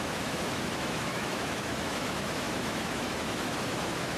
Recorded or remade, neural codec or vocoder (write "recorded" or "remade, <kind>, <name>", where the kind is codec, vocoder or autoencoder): remade, autoencoder, DAC-VAE